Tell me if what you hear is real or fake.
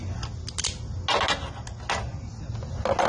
real